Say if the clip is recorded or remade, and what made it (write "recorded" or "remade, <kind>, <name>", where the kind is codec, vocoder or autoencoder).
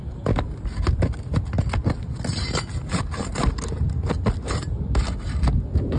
recorded